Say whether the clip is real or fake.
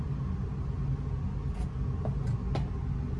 real